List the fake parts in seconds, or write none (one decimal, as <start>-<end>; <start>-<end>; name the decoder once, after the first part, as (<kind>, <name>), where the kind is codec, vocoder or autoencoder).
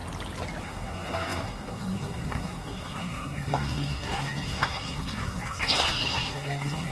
0.6-6.9 (codec, SNAC)